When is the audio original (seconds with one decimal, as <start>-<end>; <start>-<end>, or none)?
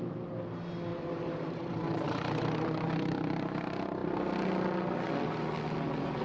0.0-0.9; 2.9-6.2